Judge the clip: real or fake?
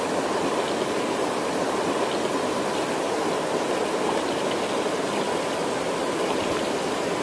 real